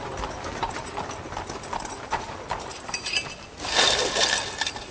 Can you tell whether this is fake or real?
real